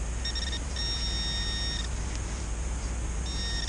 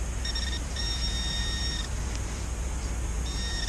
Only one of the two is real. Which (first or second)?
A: first